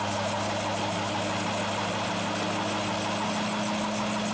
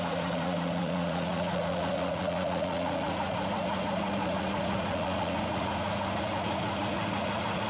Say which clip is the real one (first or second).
first